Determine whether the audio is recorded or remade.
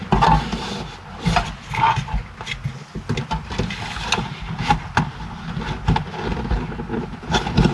recorded